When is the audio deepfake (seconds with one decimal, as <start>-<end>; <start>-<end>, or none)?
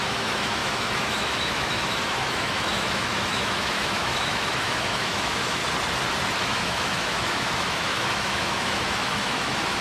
0.0-5.6; 6.4-9.8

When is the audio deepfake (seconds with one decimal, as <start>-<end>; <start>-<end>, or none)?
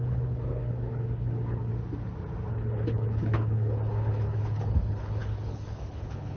0.0-1.7; 2.5-6.4